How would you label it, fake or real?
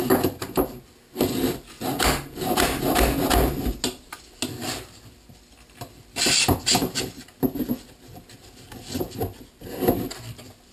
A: real